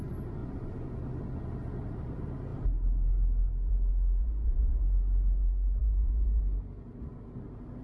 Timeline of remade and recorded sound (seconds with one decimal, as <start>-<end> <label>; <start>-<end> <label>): 0.0-0.4 recorded; 0.4-0.9 remade; 0.9-4.2 recorded; 4.2-4.8 remade; 4.8-5.8 recorded; 5.8-6.4 remade; 6.4-7.8 recorded